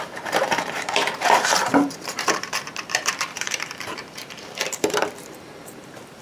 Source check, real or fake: fake